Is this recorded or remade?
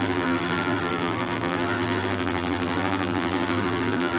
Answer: remade